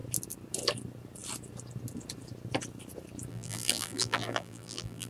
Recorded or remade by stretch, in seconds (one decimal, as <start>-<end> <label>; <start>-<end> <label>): 0.0-3.3 recorded; 3.3-5.1 remade